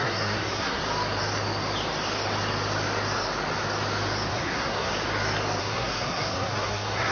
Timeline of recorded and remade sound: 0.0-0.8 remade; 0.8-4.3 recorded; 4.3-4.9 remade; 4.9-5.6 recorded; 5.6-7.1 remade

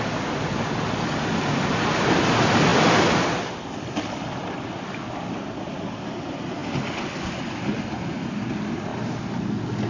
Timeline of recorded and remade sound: 0.0-9.9 recorded